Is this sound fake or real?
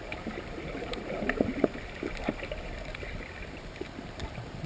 real